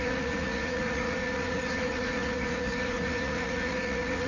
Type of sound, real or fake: fake